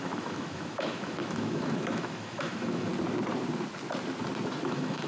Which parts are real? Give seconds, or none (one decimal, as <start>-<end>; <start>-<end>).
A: 2.9-4.6